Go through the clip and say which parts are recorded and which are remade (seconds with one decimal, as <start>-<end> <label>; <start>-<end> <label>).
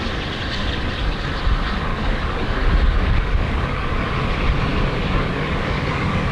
0.0-1.9 recorded; 1.9-4.3 remade; 4.3-4.7 recorded; 4.7-6.3 remade